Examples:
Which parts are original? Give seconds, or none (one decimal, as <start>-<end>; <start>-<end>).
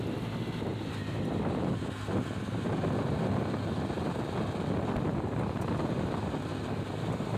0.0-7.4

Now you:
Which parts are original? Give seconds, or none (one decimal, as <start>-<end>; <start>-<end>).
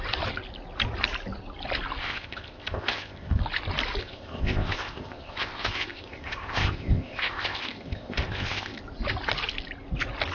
0.0-2.0; 3.4-4.0; 8.8-10.3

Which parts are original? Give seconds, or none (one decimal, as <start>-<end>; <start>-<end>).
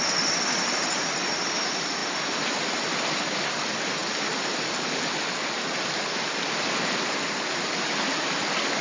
0.0-8.8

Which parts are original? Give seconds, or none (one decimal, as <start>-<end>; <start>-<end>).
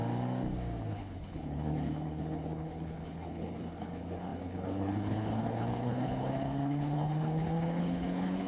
0.0-0.9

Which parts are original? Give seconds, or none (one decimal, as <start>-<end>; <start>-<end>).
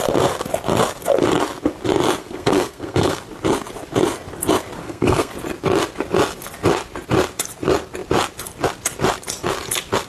0.0-2.2; 3.2-4.8; 5.3-10.1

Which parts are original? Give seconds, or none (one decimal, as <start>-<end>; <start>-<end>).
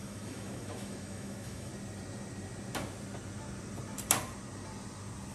1.7-5.3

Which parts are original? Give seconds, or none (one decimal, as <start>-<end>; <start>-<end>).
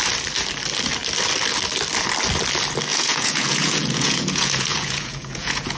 0.0-2.9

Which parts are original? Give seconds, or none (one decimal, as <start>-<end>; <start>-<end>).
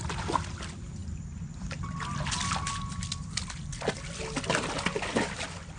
1.0-2.6